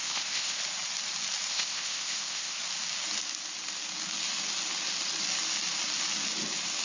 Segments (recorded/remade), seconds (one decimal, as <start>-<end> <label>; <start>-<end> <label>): 0.0-0.6 remade; 0.6-1.5 recorded; 1.5-2.6 remade; 2.6-6.8 recorded